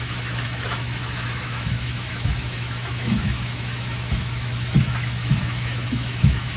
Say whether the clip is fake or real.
fake